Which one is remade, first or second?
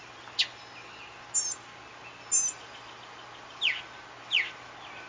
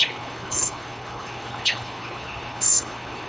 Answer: second